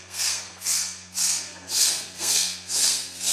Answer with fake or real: fake